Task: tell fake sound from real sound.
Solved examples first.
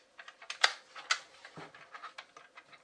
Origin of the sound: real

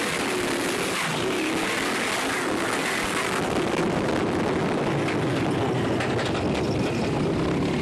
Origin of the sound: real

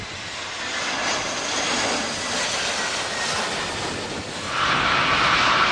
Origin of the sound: real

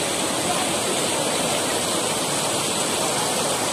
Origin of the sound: real